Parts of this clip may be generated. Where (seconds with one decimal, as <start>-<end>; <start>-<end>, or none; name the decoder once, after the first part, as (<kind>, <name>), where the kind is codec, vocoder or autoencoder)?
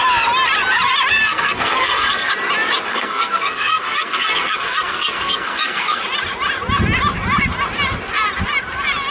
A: 1.2-2.3 (codec, SNAC); 2.9-6.0